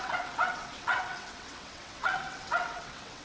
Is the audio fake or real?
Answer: fake